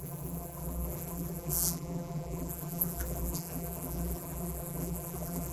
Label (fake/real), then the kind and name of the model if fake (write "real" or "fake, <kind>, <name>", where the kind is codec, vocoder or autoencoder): fake, vocoder, BigVGAN v2